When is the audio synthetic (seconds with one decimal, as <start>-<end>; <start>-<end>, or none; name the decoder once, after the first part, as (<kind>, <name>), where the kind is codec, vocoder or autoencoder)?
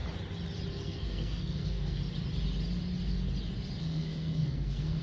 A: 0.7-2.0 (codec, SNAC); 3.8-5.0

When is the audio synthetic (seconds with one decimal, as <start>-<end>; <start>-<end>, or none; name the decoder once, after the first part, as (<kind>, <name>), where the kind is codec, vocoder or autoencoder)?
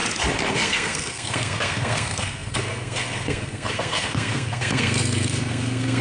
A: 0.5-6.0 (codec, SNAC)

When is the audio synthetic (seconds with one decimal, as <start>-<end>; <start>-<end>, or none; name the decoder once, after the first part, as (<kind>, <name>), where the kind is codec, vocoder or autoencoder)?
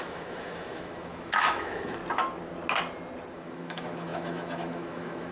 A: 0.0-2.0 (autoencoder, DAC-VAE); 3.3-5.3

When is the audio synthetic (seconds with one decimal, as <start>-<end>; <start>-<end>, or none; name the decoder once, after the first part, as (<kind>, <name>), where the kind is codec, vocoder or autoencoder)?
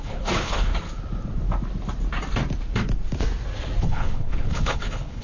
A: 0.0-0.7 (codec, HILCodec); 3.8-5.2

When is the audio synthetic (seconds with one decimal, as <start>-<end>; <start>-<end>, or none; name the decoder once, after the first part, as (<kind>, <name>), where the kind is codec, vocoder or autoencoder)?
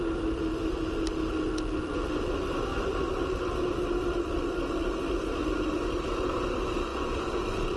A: 6.9-7.8 (vocoder, Vocos)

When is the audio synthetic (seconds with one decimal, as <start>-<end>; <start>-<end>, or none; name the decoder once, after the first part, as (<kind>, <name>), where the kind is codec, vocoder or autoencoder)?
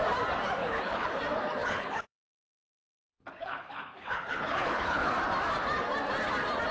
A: 0.6-1.1 (codec, HILCodec); 1.6-5.1